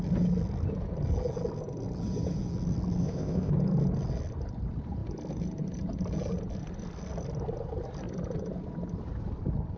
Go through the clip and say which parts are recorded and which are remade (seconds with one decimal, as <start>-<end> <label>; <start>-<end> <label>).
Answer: 0.0-3.0 recorded; 3.0-3.5 remade; 3.5-9.8 recorded